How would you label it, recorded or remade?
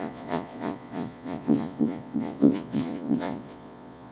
remade